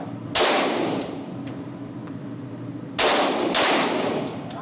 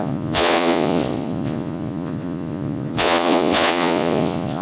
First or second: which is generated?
second